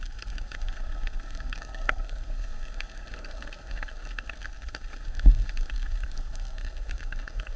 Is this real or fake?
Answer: fake